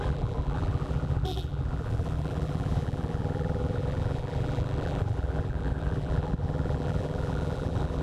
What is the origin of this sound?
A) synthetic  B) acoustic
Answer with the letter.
A